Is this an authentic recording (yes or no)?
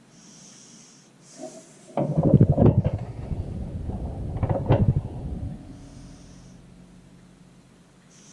yes